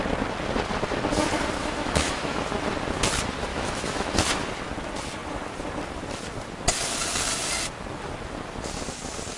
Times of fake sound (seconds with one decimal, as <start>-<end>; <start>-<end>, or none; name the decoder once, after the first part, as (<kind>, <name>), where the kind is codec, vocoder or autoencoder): 1.6-2.5 (autoencoder, DAC-VAE); 3.5-4.2